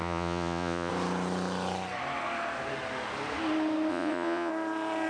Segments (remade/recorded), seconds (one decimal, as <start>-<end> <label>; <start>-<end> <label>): 0.0-0.9 remade; 0.9-3.9 recorded; 3.9-4.5 remade; 4.5-5.1 recorded